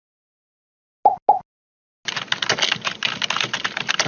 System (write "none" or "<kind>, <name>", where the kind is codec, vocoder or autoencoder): none